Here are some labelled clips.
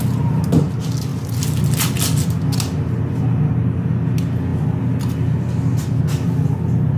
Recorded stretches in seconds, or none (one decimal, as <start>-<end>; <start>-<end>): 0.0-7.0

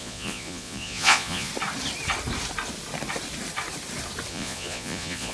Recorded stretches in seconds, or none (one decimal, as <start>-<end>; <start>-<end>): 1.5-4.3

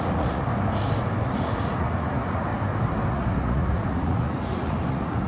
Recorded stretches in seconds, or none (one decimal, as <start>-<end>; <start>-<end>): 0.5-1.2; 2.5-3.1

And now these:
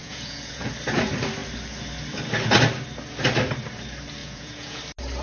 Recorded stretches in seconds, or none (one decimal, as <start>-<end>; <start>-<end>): 0.7-4.2; 4.8-5.2

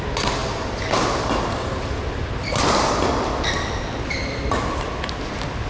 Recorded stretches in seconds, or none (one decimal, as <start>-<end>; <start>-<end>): 0.0-5.7

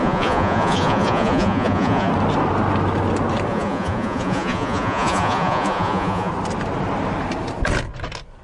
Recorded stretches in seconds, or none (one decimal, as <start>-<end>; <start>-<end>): 2.1-3.5; 6.3-8.4